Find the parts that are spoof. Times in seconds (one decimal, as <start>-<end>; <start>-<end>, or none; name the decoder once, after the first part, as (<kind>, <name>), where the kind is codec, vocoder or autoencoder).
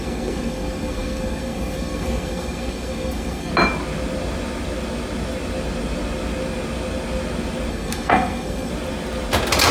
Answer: 0.0-3.5 (codec, SNAC); 7.7-8.7